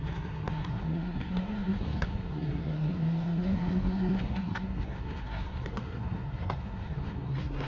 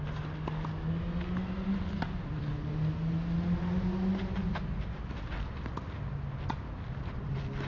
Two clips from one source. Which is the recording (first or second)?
second